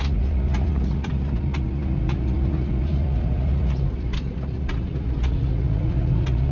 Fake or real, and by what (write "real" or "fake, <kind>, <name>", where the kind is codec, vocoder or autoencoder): fake, vocoder, Vocos